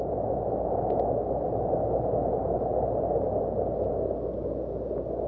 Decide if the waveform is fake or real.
real